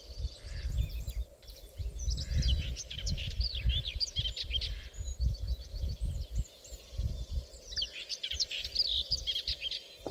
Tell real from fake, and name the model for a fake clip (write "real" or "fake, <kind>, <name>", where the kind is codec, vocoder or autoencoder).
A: fake, vocoder, BigVGAN v2